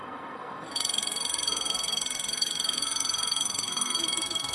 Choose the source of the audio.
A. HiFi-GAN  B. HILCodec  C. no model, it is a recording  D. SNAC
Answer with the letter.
D